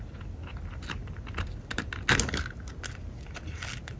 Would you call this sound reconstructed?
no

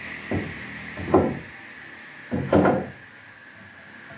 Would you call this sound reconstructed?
no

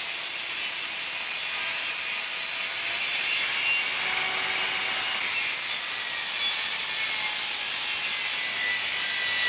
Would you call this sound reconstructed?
no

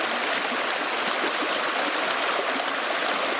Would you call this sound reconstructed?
no